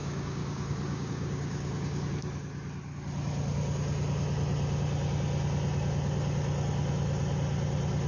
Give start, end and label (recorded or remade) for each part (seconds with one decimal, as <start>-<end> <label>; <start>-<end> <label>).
0.0-2.0 remade; 2.0-8.1 recorded